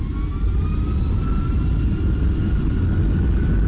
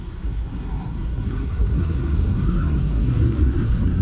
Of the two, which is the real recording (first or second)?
first